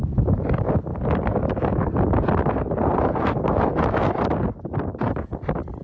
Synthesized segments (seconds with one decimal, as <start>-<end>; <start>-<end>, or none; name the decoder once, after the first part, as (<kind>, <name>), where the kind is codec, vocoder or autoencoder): 0.9-1.5 (vocoder, BigVGAN v2)